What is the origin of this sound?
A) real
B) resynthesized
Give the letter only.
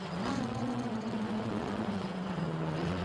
B